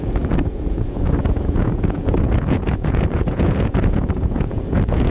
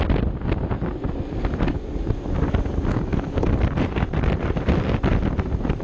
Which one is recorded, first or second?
second